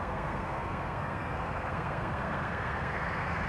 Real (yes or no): no